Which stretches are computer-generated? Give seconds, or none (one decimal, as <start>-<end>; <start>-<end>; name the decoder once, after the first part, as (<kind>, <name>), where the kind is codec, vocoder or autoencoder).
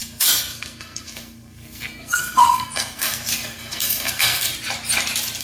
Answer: 0.0-4.5 (codec, SNAC)